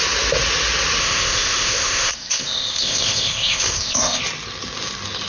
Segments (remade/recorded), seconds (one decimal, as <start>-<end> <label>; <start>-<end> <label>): 0.0-1.0 recorded; 1.0-4.2 remade; 4.2-5.3 recorded